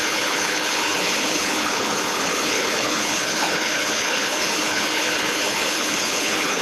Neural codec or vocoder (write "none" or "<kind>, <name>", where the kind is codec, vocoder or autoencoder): codec, HILCodec